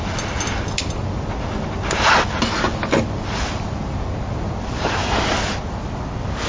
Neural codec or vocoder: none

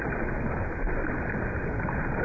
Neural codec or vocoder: none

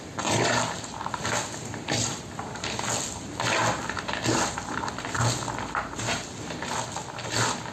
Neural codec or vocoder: none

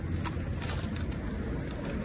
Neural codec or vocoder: none